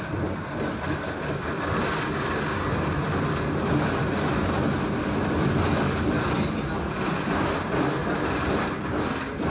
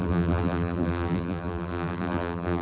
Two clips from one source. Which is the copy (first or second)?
second